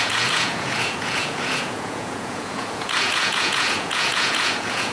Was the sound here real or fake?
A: fake